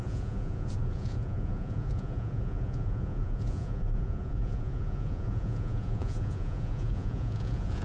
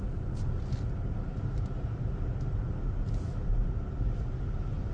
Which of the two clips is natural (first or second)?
second